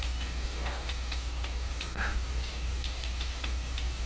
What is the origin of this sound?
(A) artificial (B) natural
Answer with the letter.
A